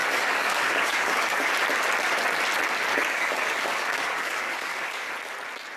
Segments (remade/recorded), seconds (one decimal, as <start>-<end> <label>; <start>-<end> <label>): 0.0-1.5 remade; 1.5-2.9 recorded; 2.9-5.1 remade; 5.1-5.8 recorded